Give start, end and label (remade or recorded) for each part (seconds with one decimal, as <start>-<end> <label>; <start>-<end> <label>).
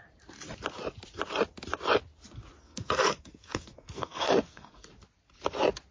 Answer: 0.0-2.6 recorded; 2.6-4.9 remade; 4.9-5.9 recorded